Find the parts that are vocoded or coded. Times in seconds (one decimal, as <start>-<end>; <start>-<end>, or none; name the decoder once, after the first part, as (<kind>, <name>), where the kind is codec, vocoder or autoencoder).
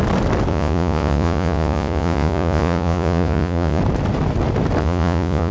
0.5-3.8 (vocoder, Vocos); 4.8-5.5